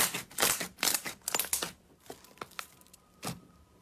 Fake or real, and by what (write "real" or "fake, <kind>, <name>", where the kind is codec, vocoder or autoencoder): fake, vocoder, BigVGAN v2